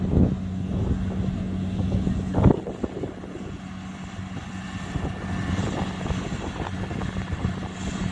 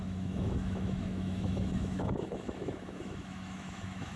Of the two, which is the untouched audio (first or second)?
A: first